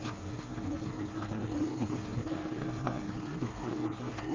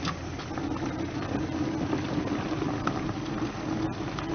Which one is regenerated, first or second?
first